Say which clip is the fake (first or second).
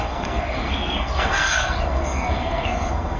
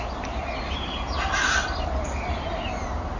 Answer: first